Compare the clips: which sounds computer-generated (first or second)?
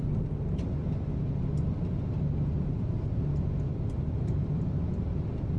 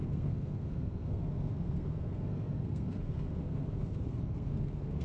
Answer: second